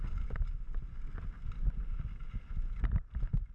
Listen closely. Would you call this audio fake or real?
real